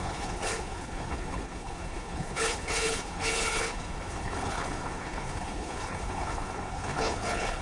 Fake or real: fake